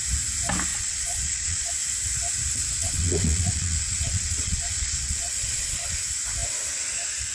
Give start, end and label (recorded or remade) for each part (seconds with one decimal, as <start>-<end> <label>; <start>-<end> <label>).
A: 0.0-0.7 recorded; 0.7-1.7 remade; 1.7-2.8 recorded; 2.8-5.9 remade; 5.9-7.3 recorded